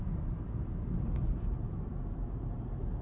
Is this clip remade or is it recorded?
recorded